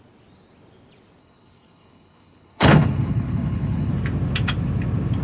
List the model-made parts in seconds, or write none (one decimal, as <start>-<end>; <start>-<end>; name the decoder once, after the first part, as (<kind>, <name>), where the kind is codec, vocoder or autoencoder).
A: 1.2-3.9 (codec, HILCodec)